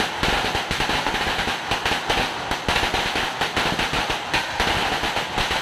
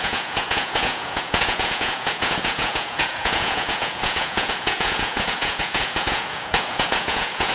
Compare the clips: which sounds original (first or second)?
first